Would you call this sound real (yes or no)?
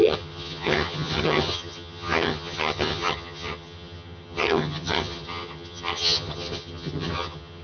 no